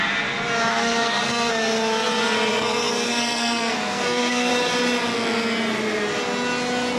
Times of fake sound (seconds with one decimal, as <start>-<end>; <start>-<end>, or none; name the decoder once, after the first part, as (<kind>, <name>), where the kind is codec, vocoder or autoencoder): 0.7-1.5 (codec, SNAC); 2.5-4.5